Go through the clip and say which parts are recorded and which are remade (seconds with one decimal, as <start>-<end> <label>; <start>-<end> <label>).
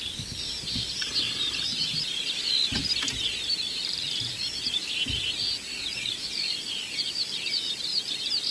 0.0-8.5 remade